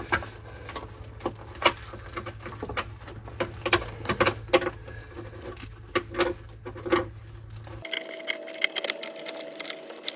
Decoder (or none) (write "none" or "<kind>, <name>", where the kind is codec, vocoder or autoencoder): none